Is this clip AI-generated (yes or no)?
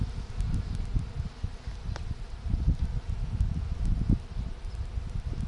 no